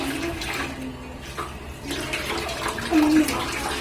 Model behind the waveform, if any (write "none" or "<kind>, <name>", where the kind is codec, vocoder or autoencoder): none